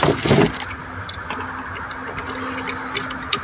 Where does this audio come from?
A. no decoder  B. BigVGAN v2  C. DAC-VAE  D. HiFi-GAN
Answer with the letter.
A